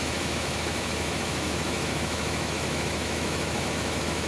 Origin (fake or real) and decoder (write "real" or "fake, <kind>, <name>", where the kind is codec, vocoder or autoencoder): fake, autoencoder, DAC-VAE